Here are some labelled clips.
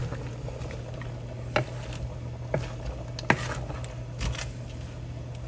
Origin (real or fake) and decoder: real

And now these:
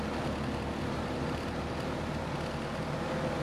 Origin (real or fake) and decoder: real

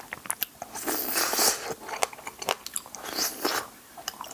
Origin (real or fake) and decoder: real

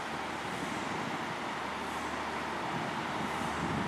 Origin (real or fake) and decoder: real